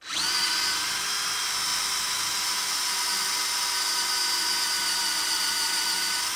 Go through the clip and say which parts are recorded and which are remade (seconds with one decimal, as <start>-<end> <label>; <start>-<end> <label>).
0.0-6.4 recorded